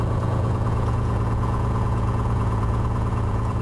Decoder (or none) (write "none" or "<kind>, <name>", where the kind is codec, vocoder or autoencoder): vocoder, Vocos